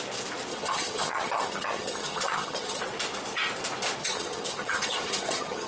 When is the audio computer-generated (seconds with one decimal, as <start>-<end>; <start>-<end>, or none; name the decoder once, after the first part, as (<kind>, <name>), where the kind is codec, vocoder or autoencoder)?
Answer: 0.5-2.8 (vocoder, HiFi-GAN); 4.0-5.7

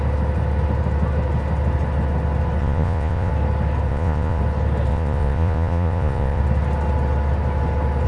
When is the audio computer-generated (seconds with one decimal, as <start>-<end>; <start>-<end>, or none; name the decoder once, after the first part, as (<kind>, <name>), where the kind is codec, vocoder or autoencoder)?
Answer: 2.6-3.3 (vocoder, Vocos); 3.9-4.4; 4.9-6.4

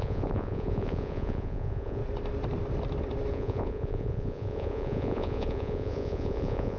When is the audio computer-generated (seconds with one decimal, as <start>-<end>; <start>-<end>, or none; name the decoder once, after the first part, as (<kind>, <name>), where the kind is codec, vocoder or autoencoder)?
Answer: 0.0-2.0 (vocoder, Vocos); 3.3-6.8

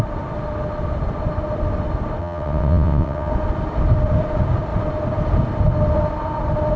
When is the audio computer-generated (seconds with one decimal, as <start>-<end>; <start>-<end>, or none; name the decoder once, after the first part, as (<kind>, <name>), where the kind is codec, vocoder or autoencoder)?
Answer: 2.2-3.3 (vocoder, WaveNeXt)

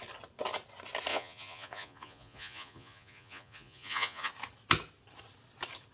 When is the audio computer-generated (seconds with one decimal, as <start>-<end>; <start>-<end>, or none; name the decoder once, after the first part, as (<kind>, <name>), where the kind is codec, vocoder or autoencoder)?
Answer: 1.1-4.3 (vocoder, Vocos)

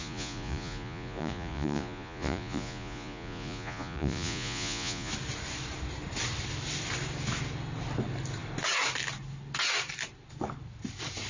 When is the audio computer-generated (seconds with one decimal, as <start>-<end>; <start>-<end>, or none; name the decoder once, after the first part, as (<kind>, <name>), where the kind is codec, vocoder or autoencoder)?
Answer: 0.0-5.1 (vocoder, Vocos)